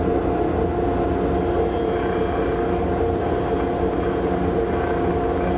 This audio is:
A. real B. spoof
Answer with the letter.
A